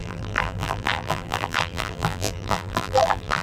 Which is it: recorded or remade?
remade